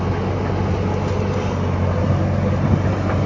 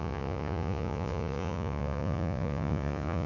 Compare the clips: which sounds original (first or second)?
first